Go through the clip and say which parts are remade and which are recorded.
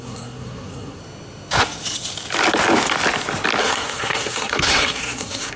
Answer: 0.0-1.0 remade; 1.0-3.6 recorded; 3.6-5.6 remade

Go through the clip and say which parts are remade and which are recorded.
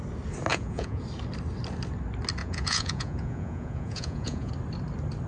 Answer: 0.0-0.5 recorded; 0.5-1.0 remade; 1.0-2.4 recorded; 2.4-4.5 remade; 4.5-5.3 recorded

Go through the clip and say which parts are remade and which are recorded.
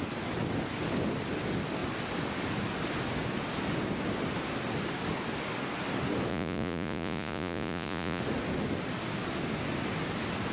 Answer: 0.0-6.3 recorded; 6.3-8.2 remade; 8.2-10.5 recorded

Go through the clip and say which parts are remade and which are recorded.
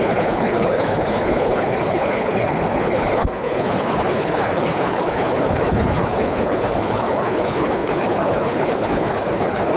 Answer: 0.0-9.8 remade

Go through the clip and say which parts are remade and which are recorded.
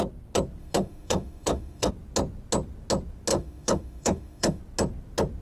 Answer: 0.0-0.6 recorded; 0.6-1.9 remade; 1.9-3.3 recorded; 3.3-4.6 remade; 4.6-5.4 recorded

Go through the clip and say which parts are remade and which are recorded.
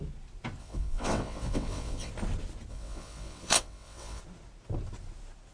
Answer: 0.0-0.6 recorded; 0.6-2.1 remade; 2.1-2.7 recorded; 2.7-4.2 remade; 4.2-5.5 recorded